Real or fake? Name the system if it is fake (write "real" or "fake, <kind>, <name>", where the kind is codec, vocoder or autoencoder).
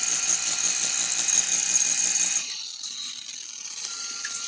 real